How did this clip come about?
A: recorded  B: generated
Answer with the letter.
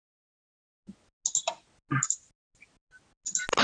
A